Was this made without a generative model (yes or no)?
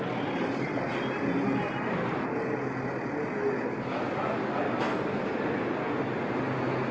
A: yes